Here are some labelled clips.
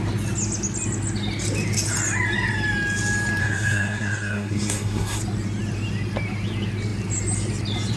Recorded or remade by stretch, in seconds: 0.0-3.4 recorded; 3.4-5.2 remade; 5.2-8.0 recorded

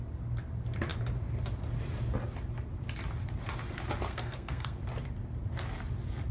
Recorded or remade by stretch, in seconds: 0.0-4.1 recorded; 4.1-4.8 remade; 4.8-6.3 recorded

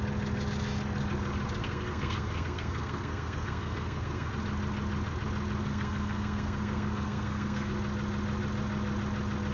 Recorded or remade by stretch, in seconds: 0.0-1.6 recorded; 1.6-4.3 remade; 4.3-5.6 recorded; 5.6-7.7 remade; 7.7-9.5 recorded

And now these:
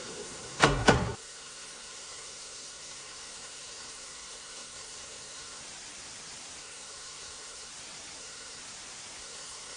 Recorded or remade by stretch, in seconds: 0.0-5.6 remade; 5.6-6.6 recorded; 6.6-7.7 remade; 7.7-8.2 recorded; 8.2-8.6 remade; 8.6-9.2 recorded; 9.2-9.8 remade

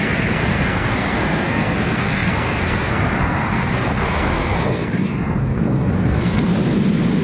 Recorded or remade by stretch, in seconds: 0.0-6.5 remade; 6.5-7.2 recorded

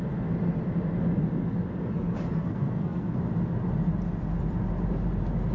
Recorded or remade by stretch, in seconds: 0.0-2.4 recorded; 2.4-3.2 remade; 3.2-5.5 recorded

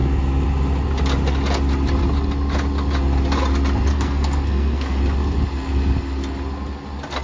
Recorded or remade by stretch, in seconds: 0.0-3.9 recorded; 3.9-5.0 remade; 5.0-7.2 recorded

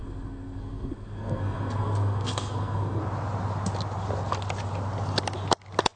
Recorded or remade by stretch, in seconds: 0.0-3.0 remade; 3.0-6.0 recorded